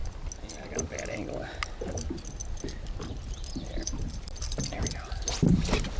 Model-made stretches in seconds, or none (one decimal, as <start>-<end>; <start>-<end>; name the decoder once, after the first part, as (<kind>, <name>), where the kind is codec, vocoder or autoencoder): 2.4-5.1 (vocoder, BigVGAN v2)